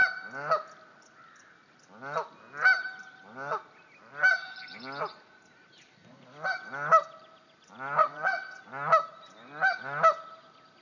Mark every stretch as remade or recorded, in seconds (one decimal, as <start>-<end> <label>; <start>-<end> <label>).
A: 0.0-8.0 recorded; 8.0-8.6 remade; 8.6-10.8 recorded